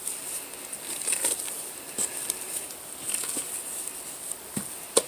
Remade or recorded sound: recorded